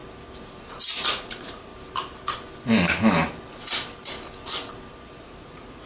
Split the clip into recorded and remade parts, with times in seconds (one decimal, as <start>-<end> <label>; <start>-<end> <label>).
0.0-1.0 recorded; 1.0-1.7 remade; 1.7-5.2 recorded; 5.2-5.9 remade